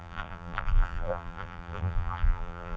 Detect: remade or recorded remade